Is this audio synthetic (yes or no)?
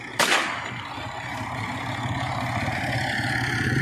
no